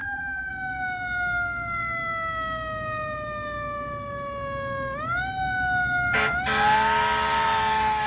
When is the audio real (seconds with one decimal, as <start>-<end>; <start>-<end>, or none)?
0.5-8.1